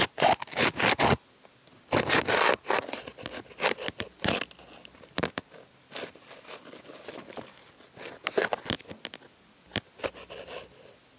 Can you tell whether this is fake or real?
real